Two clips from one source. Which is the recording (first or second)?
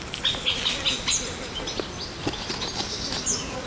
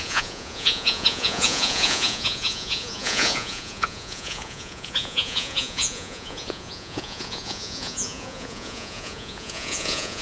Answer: first